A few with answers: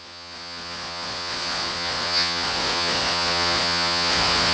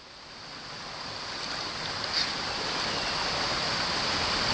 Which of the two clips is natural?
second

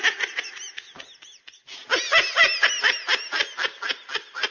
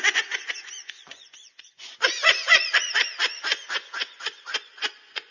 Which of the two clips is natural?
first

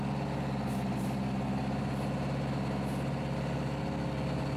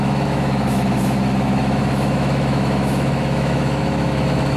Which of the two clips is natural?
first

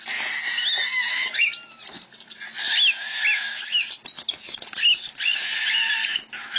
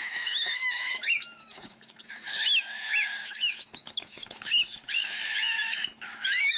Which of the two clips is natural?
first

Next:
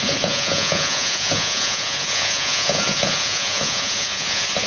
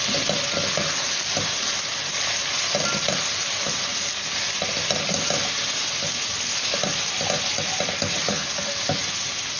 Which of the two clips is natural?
second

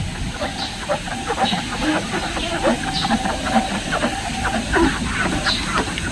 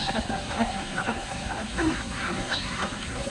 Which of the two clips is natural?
first